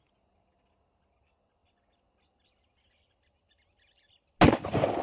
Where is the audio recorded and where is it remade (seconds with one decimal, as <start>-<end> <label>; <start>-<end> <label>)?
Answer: 0.0-5.0 recorded